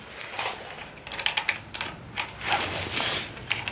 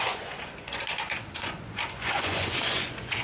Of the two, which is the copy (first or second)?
second